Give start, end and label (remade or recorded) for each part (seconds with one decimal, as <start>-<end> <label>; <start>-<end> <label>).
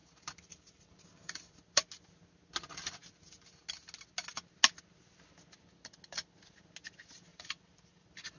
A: 0.0-1.5 remade; 1.5-7.3 recorded; 7.3-8.4 remade